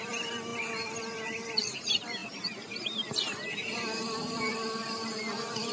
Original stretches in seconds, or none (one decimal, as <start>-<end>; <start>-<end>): 0.0-5.7